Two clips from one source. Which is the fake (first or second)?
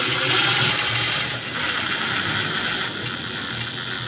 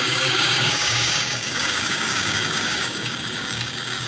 second